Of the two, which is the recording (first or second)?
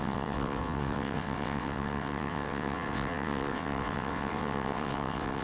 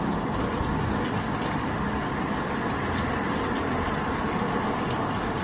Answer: second